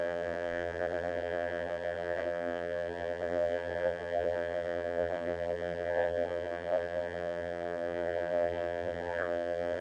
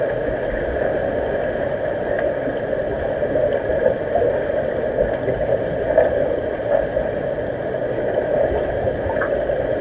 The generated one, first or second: first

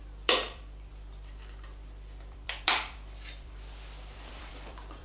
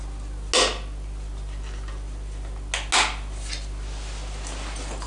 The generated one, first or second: first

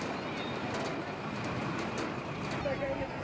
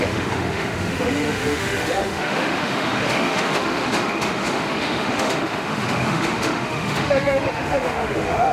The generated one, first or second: second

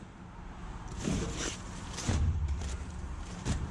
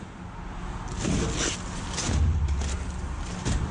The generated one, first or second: first